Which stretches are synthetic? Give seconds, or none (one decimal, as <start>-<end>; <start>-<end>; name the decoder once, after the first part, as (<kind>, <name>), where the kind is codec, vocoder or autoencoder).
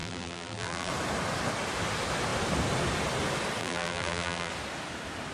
0.0-0.9 (vocoder, BigVGAN v2); 3.6-4.5